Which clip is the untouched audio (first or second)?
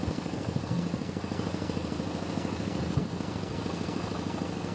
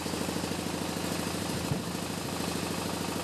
second